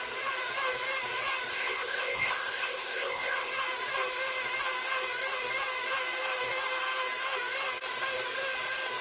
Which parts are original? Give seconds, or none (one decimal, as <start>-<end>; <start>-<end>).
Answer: 0.0-1.5; 3.5-9.0